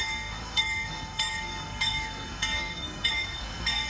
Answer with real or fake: fake